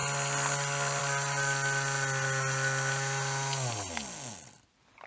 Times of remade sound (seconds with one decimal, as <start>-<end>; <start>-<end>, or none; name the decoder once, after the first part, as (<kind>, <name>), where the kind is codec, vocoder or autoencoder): none